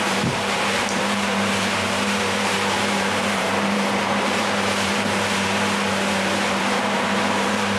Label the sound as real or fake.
fake